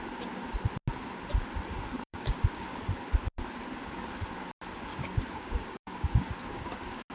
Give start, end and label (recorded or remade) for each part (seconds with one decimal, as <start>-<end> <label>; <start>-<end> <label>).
0.0-1.8 recorded; 1.8-2.8 remade; 2.8-4.9 recorded; 4.9-7.1 remade